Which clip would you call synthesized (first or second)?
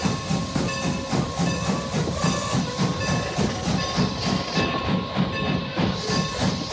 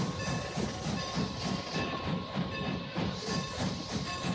second